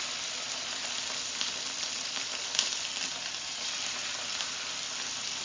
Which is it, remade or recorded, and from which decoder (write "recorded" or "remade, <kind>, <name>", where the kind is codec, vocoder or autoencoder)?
recorded